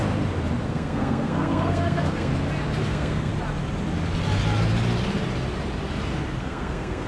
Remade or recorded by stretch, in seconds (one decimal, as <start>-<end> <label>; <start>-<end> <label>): 0.0-0.6 recorded; 0.6-2.3 remade; 2.3-2.9 recorded; 2.9-3.3 remade; 3.3-6.4 recorded; 6.4-7.1 remade